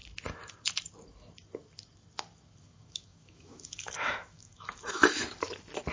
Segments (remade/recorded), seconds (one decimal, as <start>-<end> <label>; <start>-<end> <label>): 0.0-2.6 recorded; 2.6-5.0 remade; 5.0-5.9 recorded